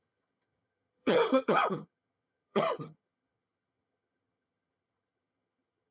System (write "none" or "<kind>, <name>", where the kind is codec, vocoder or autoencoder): vocoder, HiFi-GAN